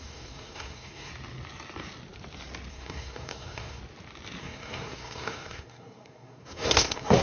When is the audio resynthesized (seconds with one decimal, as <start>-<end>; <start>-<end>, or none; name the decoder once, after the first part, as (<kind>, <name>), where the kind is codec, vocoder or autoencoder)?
0.0-1.1 (codec, SNAC); 2.7-3.8; 4.4-7.2